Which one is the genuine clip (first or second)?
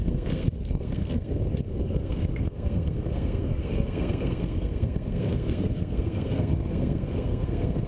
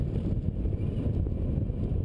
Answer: second